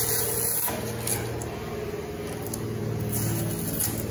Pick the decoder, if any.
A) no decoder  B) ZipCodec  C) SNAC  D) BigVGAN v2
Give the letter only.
A